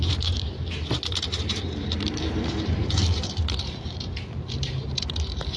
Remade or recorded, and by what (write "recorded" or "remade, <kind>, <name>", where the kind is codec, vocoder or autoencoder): remade, vocoder, BigVGAN v2